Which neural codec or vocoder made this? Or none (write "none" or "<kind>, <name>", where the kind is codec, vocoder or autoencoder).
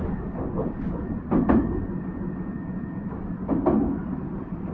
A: vocoder, BigVGAN v2